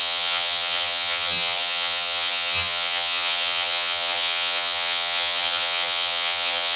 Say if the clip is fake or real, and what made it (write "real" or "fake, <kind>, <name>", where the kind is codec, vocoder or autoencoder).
fake, vocoder, HiFi-GAN